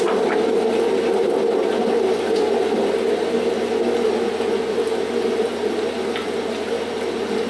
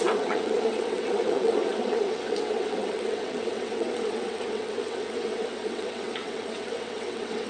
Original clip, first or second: first